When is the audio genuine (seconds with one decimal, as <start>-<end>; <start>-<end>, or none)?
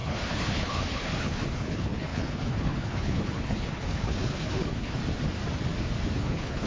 5.0-6.2